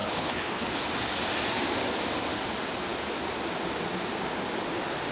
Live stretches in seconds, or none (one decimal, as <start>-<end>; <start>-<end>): 0.8-5.1